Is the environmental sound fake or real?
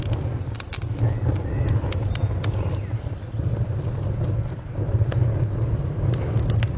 real